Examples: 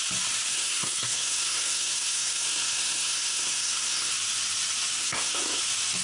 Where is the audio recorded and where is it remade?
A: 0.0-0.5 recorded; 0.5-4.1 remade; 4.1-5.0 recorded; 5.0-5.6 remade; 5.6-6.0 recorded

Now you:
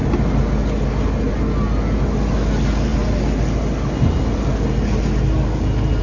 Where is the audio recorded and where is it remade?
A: 0.0-6.0 recorded

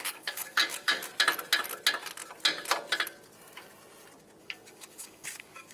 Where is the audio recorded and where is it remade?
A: 0.0-1.0 remade; 1.0-4.4 recorded; 4.4-5.7 remade

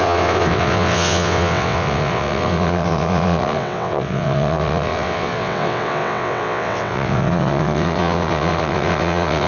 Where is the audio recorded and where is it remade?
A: 0.0-9.5 remade

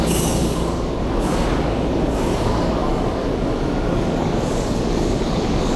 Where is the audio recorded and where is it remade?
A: 0.0-5.8 remade

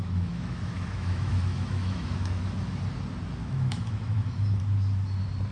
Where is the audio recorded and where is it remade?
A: 0.0-2.5 remade; 2.5-3.4 recorded; 3.4-4.6 remade; 4.6-5.5 recorded